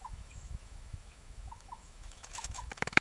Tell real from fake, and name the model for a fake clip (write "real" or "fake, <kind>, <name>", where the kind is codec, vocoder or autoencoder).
fake, autoencoder, DAC-VAE